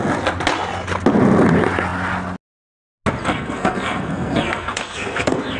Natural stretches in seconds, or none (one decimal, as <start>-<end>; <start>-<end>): 0.0-3.2